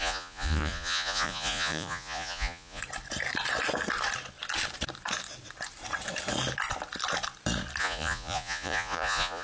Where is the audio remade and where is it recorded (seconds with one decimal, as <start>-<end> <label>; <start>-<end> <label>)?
0.0-2.8 remade; 2.8-7.8 recorded; 7.8-9.4 remade